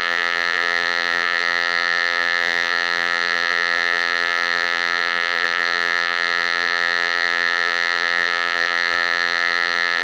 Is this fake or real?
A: fake